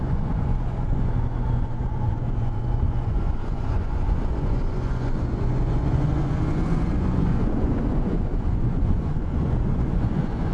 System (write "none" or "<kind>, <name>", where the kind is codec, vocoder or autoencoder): vocoder, Vocos